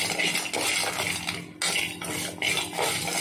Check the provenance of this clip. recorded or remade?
recorded